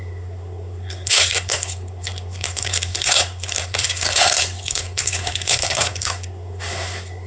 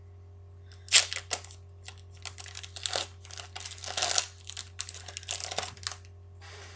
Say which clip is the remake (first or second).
first